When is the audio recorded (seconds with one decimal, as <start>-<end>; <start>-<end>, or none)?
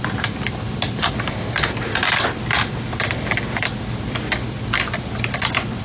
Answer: 0.0-5.8